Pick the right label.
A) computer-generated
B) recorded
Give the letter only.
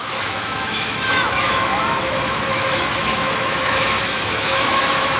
A